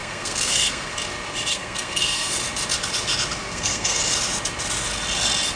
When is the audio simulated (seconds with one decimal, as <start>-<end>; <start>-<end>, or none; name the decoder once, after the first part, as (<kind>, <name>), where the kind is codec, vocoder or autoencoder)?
0.0-0.9 (codec, SNAC); 1.5-2.3; 3.4-4.0